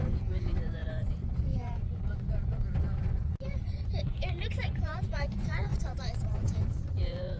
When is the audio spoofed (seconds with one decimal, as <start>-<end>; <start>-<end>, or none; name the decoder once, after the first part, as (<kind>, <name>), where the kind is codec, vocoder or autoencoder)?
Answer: 0.0-7.4 (vocoder, Vocos)